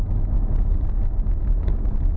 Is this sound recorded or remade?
recorded